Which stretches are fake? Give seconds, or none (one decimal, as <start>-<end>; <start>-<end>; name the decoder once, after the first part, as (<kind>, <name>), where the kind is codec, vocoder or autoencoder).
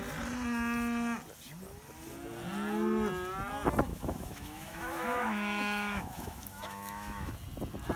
3.9-7.3 (autoencoder, DAC-VAE)